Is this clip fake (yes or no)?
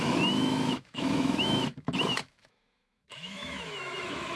yes